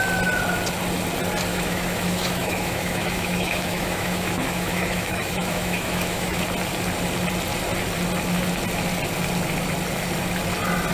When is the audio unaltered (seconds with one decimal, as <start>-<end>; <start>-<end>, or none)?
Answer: 0.0-1.5; 6.4-10.9